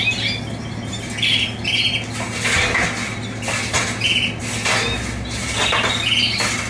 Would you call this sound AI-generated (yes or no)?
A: no